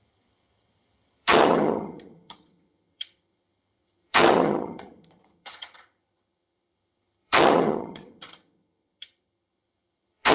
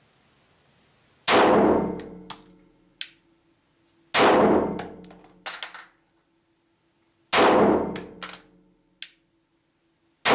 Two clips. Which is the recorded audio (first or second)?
second